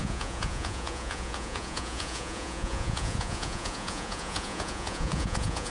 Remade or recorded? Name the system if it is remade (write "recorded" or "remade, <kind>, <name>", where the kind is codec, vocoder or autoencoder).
remade, vocoder, Vocos